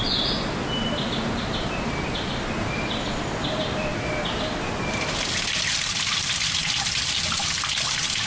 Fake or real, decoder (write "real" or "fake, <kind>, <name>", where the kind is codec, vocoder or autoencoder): real